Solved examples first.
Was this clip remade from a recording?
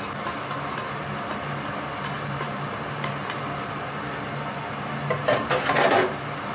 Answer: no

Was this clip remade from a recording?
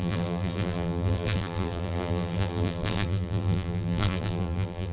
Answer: yes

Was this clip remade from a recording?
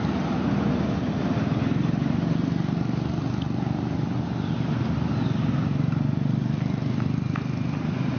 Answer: no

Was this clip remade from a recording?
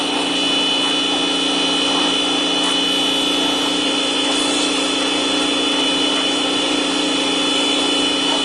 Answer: no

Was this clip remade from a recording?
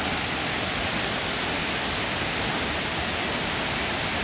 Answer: no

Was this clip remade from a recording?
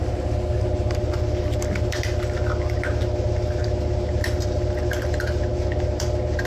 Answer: no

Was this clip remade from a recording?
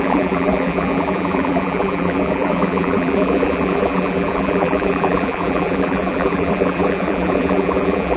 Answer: yes